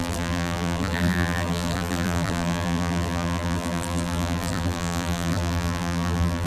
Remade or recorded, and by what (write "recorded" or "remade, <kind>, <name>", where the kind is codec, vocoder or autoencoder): remade, vocoder, BigVGAN v2